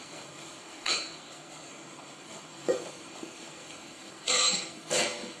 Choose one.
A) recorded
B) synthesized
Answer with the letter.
B